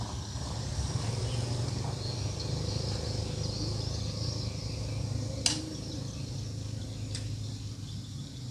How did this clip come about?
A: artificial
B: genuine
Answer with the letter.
B